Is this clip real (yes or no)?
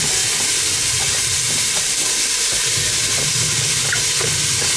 yes